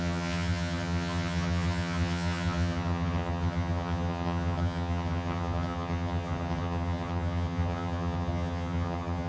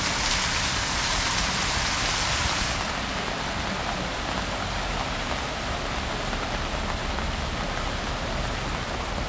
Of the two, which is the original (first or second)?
second